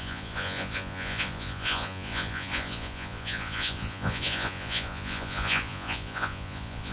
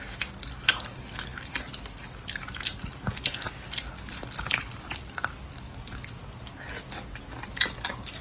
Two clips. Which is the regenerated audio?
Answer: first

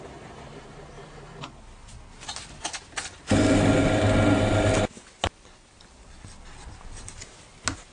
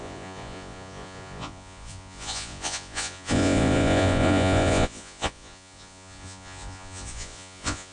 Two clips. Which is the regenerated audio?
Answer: second